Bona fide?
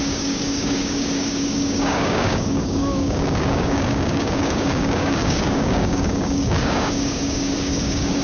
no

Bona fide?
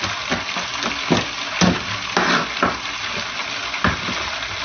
yes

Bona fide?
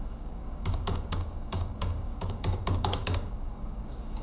no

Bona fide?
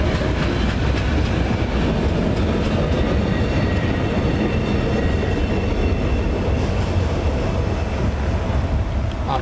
yes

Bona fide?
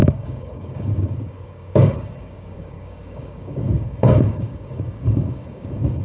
no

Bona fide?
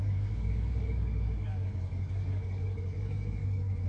no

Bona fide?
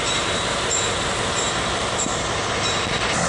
yes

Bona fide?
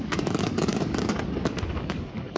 no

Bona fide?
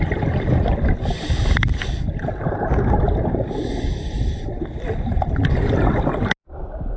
yes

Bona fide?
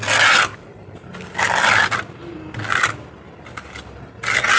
yes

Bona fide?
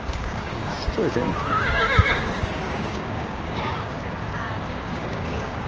no